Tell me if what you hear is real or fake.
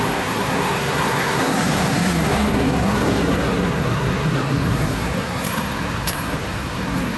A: fake